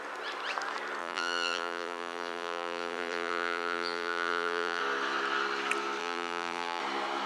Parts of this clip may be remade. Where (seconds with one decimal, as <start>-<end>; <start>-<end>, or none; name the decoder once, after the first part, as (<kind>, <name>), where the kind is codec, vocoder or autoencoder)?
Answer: 1.0-4.8 (vocoder, BigVGAN v2); 6.0-6.8